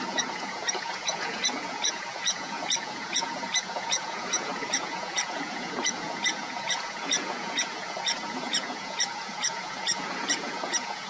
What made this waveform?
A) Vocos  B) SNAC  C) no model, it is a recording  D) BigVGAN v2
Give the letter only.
A